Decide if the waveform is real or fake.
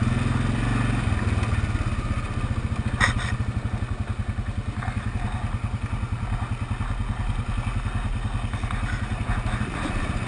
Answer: real